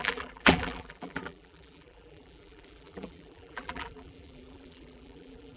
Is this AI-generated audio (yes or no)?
yes